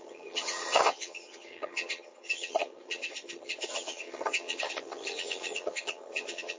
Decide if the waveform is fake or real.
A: fake